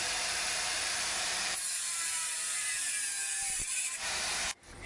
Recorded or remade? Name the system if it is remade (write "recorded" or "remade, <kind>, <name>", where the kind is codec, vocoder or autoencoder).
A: remade, vocoder, BigVGAN v2